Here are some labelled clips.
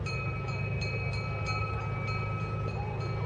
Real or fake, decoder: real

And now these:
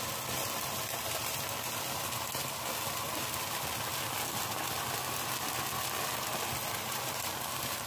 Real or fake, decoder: real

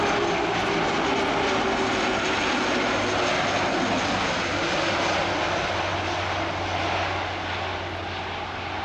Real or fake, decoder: real